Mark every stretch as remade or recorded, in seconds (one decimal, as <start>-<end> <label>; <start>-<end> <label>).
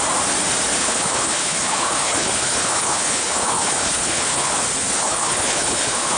0.0-0.8 recorded; 0.8-4.5 remade; 4.5-4.9 recorded; 4.9-6.2 remade